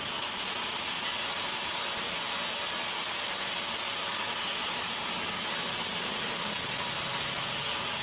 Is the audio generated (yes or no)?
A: no